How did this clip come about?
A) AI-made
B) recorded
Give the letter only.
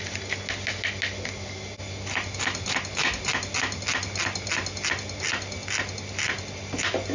B